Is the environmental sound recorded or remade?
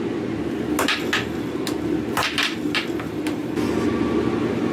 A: recorded